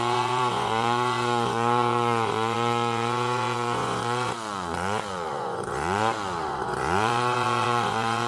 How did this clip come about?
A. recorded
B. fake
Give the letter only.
B